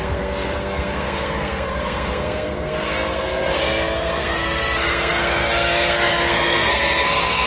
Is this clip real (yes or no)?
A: no